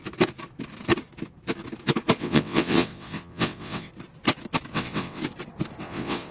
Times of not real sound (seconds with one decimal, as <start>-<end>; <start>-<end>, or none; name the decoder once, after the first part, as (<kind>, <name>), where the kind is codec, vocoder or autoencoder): 2.2-3.9 (vocoder, WaveNeXt); 4.7-5.2; 5.8-6.3